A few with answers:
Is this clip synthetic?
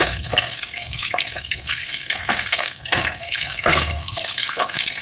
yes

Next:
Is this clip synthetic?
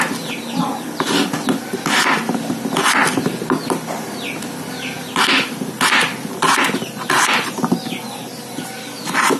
no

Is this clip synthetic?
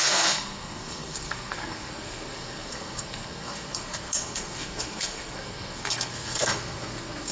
yes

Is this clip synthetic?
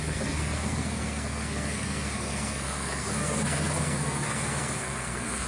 yes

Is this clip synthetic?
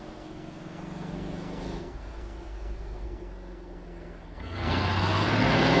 yes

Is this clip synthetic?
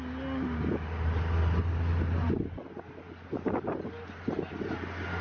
no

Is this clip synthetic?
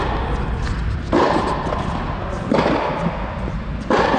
no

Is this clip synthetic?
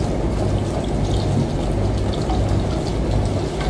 no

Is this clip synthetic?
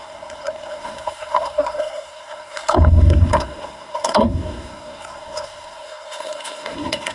yes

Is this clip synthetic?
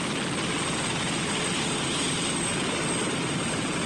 no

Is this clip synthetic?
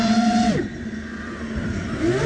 no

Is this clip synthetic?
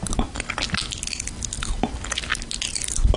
no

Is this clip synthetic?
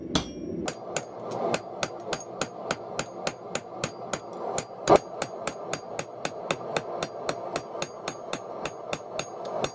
no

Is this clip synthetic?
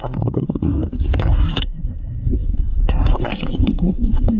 yes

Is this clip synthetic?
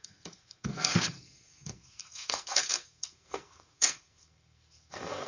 yes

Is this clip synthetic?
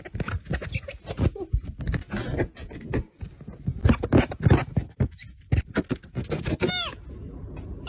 no